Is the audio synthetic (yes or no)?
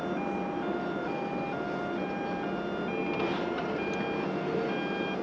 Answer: no